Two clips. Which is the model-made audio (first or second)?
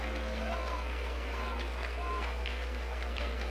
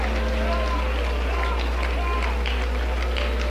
first